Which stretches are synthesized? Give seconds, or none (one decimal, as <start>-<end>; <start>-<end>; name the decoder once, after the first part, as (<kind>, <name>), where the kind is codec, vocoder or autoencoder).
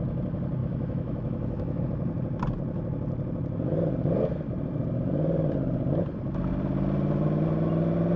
0.6-1.8 (autoencoder, DAC-VAE)